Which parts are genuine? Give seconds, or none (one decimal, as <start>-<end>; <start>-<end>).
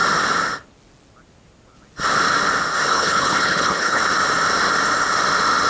0.0-2.9; 4.0-5.7